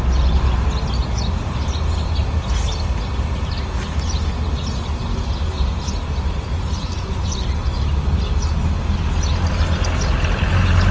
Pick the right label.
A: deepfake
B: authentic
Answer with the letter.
B